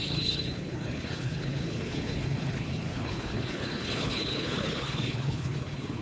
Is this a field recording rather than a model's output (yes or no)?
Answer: no